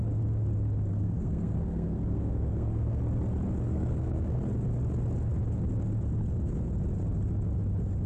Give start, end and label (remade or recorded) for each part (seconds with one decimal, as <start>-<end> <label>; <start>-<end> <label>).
0.0-0.9 recorded; 0.9-3.0 remade; 3.0-3.7 recorded; 3.7-4.4 remade; 4.4-8.1 recorded